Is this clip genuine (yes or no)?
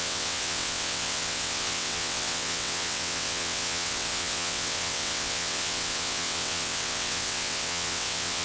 no